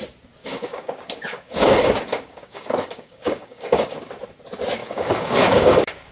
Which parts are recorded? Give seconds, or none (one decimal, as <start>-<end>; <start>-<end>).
0.0-0.4; 4.1-4.8